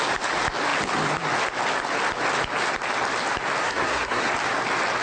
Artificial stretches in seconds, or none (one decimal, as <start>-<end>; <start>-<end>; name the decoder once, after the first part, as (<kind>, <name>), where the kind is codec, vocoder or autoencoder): 3.6-4.3 (codec, SNAC)

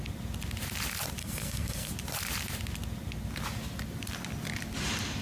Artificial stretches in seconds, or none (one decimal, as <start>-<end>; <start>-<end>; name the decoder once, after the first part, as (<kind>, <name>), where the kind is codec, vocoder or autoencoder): 1.2-1.9 (codec, SNAC)

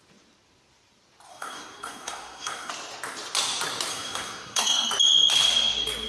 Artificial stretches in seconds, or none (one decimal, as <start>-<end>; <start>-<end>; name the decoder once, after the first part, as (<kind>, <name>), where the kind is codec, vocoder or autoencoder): 1.3-2.7 (codec, SNAC); 3.9-4.9

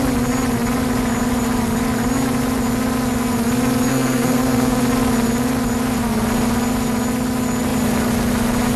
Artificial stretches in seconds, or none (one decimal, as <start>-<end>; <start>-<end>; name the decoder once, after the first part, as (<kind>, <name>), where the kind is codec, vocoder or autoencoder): 3.9-4.8 (codec, SNAC)